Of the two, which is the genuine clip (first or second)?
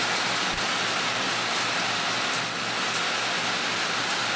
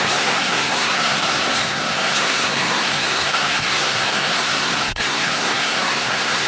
first